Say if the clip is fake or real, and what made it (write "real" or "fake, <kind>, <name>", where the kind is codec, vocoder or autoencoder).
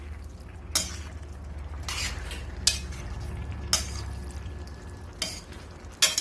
real